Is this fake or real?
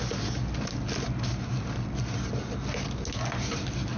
real